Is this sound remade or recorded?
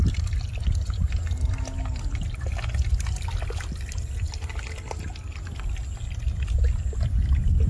recorded